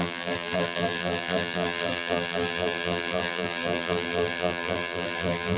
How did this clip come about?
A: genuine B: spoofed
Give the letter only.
B